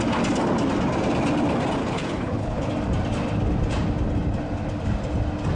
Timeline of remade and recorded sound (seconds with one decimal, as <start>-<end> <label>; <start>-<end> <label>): 0.0-1.8 recorded; 1.8-2.7 remade; 2.7-5.5 recorded